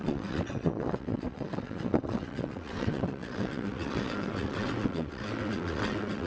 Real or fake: fake